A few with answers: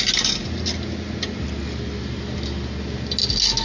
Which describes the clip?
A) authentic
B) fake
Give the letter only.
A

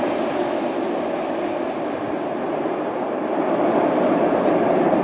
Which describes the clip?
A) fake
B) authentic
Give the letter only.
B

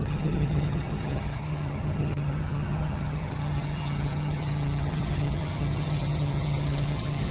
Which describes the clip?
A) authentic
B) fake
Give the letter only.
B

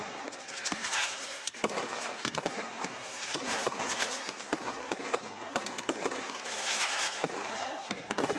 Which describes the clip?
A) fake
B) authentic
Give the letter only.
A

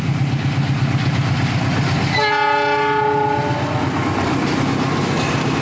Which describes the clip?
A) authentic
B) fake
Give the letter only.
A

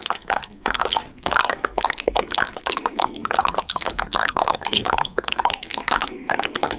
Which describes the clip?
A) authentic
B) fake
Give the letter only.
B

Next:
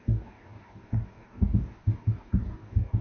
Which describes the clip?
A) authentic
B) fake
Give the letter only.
B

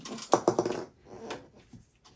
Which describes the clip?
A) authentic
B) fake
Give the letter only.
A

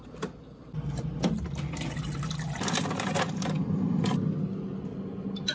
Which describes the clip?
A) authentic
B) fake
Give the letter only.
A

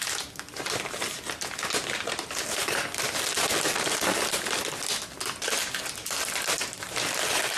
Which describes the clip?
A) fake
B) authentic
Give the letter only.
B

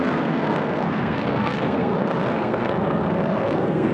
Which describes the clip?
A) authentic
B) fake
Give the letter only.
B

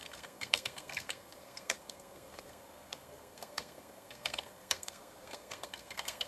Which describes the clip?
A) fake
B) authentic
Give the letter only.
A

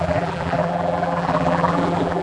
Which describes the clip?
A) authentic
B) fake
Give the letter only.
B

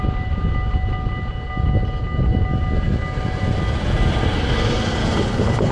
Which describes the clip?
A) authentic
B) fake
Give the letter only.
A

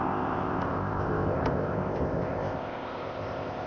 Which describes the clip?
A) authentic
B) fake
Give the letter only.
B